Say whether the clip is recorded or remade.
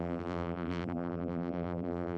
remade